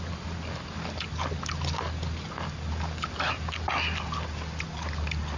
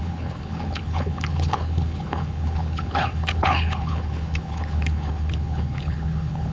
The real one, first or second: first